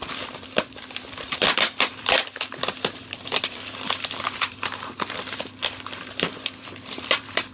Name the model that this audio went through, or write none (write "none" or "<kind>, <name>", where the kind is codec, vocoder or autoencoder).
vocoder, BigVGAN v2